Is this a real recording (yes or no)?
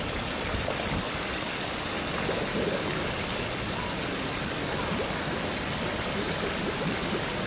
yes